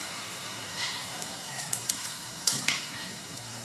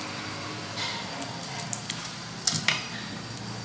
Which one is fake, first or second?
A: first